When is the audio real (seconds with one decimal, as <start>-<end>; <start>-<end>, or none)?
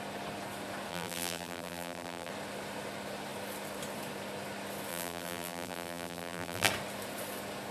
0.0-0.9; 2.3-4.9; 6.7-7.7